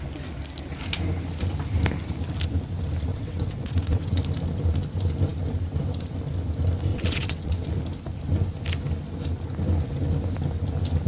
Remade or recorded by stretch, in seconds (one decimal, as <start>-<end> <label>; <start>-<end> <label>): 0.0-3.1 recorded; 3.1-4.2 remade; 4.2-6.9 recorded; 6.9-7.7 remade; 7.7-11.1 recorded